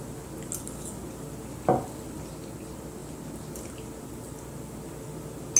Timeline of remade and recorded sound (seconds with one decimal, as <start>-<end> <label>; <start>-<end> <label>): 0.0-5.6 recorded